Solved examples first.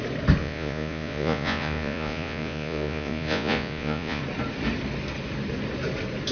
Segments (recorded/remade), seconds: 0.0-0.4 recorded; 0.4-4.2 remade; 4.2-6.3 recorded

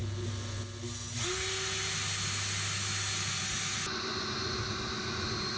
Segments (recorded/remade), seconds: 0.0-5.6 recorded

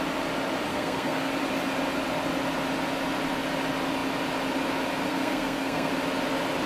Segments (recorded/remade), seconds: 0.0-0.7 recorded; 0.7-1.3 remade; 1.3-5.1 recorded; 5.1-5.9 remade; 5.9-6.7 recorded